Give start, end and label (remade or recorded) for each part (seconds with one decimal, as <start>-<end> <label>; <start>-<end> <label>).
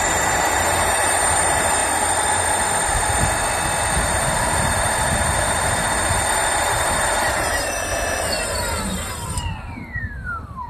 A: 0.0-1.8 remade; 1.8-6.3 recorded; 6.3-7.9 remade; 7.9-9.8 recorded; 9.8-10.7 remade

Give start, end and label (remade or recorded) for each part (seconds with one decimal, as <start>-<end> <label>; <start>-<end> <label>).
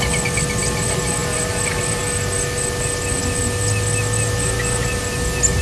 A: 0.0-5.6 recorded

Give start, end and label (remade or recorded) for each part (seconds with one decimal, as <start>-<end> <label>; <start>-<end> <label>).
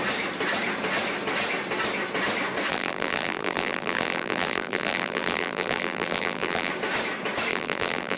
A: 0.0-2.7 recorded; 2.7-6.7 remade; 6.7-7.5 recorded; 7.5-8.2 remade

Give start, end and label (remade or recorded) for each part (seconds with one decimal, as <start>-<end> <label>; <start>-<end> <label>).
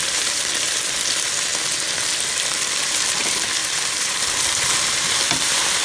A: 0.0-1.5 remade; 1.5-2.6 recorded; 2.6-5.8 remade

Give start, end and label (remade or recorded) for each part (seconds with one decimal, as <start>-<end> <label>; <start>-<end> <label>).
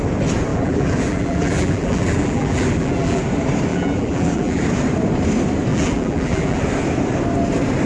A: 0.0-0.5 recorded; 0.5-3.2 remade; 3.2-3.7 recorded; 3.7-4.6 remade; 4.6-5.7 recorded; 5.7-6.6 remade; 6.6-7.9 recorded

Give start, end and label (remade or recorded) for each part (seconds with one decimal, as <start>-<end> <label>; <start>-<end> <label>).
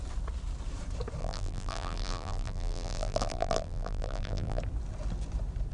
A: 0.0-1.2 recorded; 1.2-4.6 remade; 4.6-5.7 recorded